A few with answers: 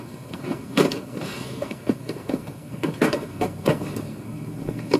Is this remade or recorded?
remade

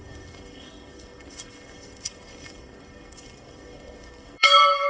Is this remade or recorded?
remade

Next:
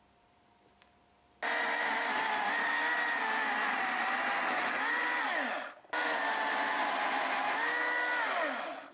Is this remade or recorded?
recorded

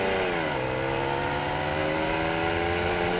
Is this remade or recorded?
recorded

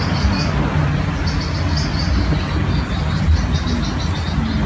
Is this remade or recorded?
recorded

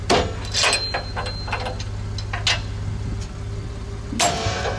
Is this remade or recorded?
recorded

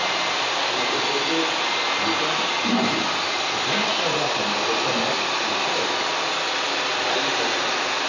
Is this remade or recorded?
recorded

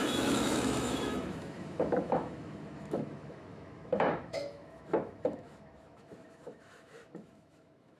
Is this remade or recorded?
remade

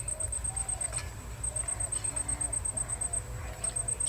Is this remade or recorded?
recorded